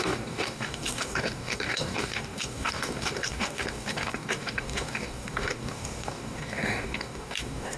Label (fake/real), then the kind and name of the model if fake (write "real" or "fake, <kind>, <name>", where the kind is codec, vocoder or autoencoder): fake, codec, DAC